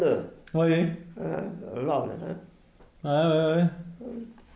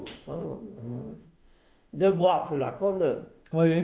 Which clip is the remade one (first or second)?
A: second